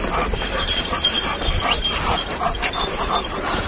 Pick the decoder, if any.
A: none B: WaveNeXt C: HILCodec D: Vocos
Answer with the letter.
A